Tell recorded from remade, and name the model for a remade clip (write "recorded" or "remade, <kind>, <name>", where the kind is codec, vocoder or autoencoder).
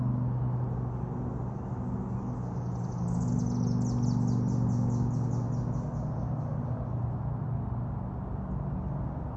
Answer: recorded